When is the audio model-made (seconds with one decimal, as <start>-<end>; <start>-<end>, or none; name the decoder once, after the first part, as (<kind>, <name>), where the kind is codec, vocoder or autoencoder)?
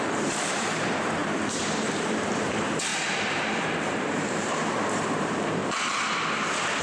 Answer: 0.0-5.6 (vocoder, BigVGAN v2)